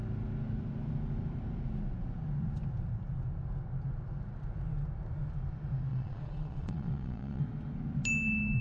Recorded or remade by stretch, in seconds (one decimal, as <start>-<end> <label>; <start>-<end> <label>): 0.0-5.9 recorded; 5.9-7.4 remade; 7.4-8.6 recorded

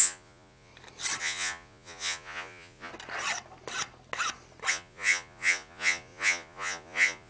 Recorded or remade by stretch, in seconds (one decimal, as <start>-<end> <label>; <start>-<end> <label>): 0.0-0.7 remade; 0.7-1.2 recorded; 1.2-2.9 remade; 2.9-4.7 recorded; 4.7-7.3 remade